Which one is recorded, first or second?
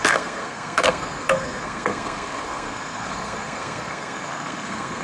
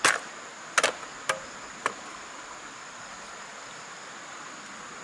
second